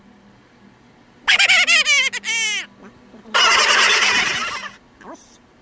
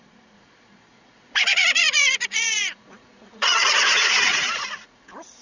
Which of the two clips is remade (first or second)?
second